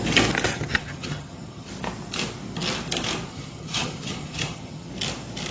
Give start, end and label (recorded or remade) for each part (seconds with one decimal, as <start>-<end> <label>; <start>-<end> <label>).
0.0-0.5 recorded; 0.5-1.7 remade; 1.7-3.3 recorded; 3.3-4.9 remade; 4.9-5.5 recorded